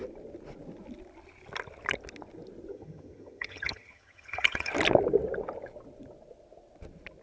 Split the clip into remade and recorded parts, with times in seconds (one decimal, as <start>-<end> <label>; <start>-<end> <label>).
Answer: 0.0-2.7 recorded; 2.7-4.7 remade; 4.7-7.2 recorded